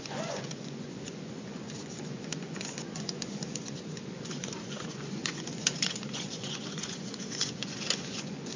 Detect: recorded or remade remade